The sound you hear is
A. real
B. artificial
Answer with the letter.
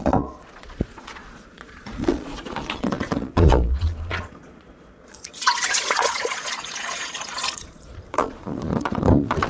B